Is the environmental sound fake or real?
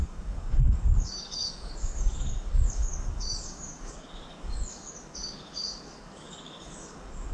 fake